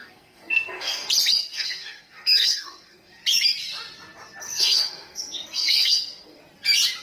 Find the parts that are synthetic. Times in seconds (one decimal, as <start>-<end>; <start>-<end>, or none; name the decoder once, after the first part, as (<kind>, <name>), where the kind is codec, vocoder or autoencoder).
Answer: 0.0-1.1 (codec, SNAC); 1.5-3.2; 4.4-6.4